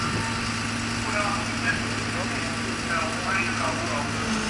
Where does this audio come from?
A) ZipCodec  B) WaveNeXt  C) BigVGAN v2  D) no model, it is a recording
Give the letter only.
D